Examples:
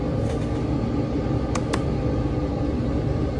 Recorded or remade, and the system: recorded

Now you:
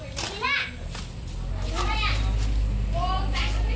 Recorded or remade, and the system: recorded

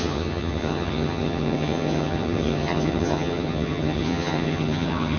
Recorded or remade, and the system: remade, vocoder, HiFi-GAN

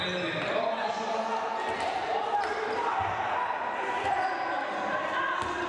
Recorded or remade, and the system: recorded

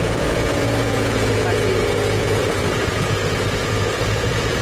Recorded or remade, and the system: remade, vocoder, Vocos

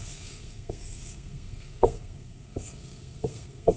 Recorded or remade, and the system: remade, codec, SNAC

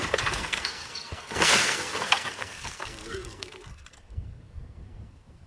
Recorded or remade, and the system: remade, codec, SNAC